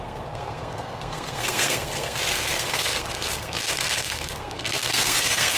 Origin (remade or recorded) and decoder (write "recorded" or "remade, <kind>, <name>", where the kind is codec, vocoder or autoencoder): remade, codec, SNAC